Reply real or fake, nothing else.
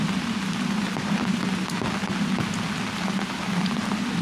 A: real